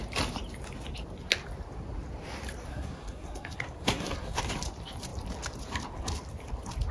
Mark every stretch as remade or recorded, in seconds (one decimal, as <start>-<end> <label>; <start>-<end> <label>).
0.0-2.7 recorded; 2.7-4.4 remade; 4.4-6.9 recorded